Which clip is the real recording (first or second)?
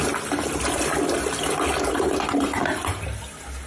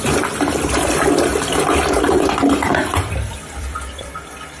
first